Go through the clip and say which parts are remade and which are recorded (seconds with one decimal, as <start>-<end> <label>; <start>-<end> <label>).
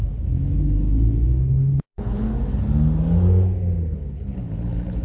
0.0-2.3 remade; 2.3-3.8 recorded; 3.8-5.0 remade